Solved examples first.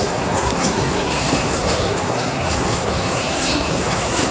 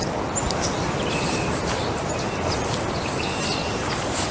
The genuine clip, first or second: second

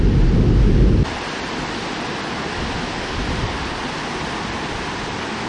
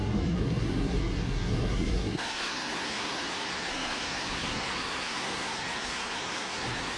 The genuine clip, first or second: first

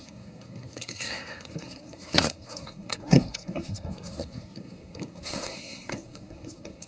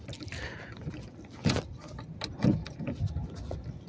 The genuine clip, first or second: second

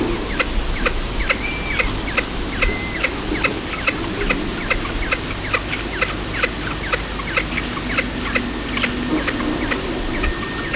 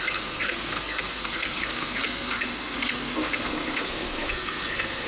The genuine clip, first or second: first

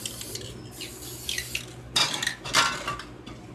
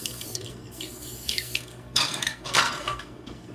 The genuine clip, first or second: first